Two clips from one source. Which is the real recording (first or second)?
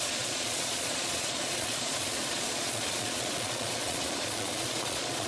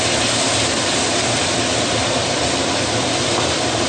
second